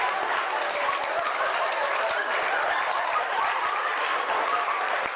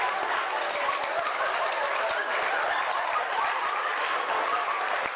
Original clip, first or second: first